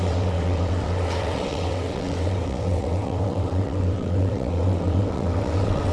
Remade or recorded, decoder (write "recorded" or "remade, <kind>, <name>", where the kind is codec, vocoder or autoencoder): remade, vocoder, WaveNeXt